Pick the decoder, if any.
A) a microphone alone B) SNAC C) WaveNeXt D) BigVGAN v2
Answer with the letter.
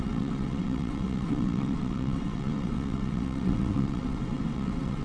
C